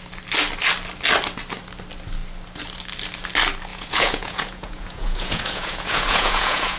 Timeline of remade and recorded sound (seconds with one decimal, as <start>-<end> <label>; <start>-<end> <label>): 0.0-3.7 recorded; 3.7-6.8 remade

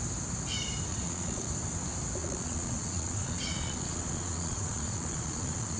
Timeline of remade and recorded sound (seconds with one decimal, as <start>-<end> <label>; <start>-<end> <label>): 0.0-0.9 recorded; 0.9-1.5 remade; 1.5-2.2 recorded; 2.2-5.8 remade